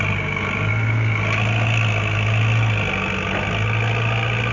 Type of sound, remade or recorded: recorded